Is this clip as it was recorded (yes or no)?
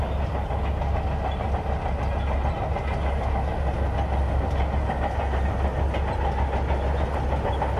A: yes